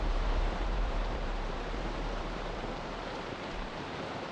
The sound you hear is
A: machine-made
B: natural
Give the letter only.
A